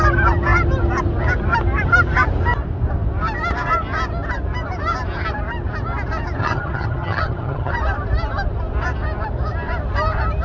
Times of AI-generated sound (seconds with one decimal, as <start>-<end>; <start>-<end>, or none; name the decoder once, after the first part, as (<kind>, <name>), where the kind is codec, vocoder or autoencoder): 6.4-7.7 (vocoder, HiFi-GAN)